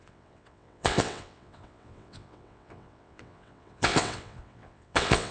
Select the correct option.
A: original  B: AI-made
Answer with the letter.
B